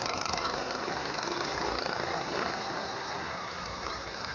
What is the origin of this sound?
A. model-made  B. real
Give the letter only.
A